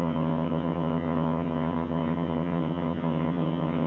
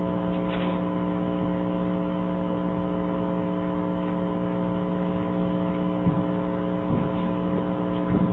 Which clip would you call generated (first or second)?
first